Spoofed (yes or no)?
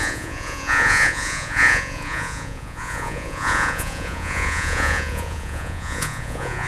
yes